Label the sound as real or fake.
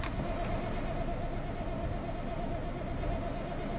real